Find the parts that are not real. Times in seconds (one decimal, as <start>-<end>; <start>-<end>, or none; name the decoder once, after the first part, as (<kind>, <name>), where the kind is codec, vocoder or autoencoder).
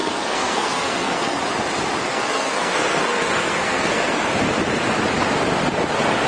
0.0-1.4 (codec, SNAC); 2.1-4.3